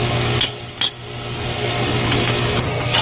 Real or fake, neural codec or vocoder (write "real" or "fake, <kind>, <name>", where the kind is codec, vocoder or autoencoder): real